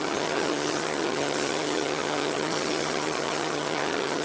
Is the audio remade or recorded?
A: remade